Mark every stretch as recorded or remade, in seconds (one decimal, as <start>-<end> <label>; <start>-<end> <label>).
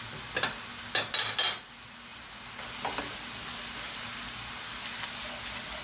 0.0-5.8 recorded